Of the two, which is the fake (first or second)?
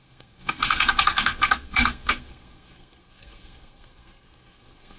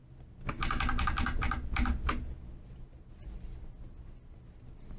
first